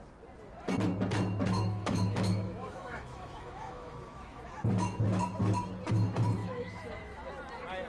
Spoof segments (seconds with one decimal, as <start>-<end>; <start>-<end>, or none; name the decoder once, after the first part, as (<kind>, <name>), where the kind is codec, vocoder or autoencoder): 1.4-4.4 (autoencoder, DAC-VAE); 6.4-7.3